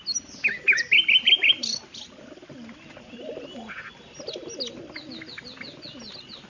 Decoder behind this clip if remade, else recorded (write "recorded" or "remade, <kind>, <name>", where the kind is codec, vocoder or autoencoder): recorded